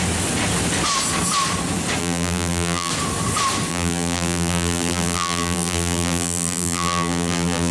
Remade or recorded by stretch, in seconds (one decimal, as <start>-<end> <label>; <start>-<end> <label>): 0.0-2.0 recorded; 2.0-2.9 remade; 2.9-3.7 recorded; 3.7-7.7 remade